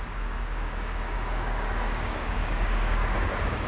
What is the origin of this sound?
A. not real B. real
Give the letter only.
A